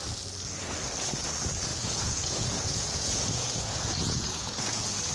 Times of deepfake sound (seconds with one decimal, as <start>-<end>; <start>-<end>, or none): 1.7-5.1